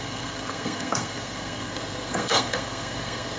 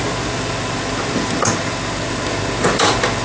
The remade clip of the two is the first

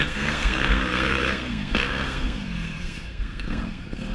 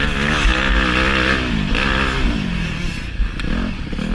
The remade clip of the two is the first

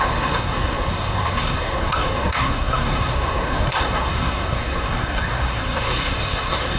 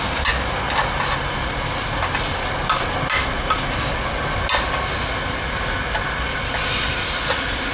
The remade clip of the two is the first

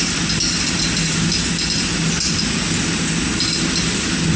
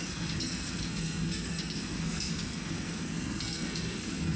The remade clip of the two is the second